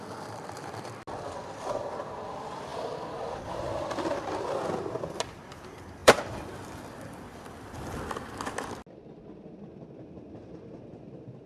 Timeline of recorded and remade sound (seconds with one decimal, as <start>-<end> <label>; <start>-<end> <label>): 0.0-6.0 recorded; 6.0-7.2 remade; 7.2-11.5 recorded